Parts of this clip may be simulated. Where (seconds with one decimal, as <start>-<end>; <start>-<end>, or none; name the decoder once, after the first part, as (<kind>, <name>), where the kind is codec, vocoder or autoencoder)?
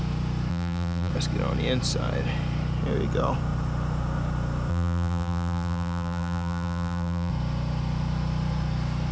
0.5-1.1 (vocoder, BigVGAN v2); 4.7-7.3